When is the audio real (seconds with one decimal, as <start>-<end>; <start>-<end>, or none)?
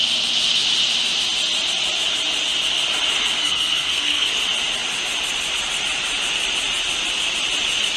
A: 0.0-3.4; 4.3-8.0